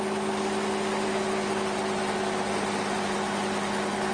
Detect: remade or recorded recorded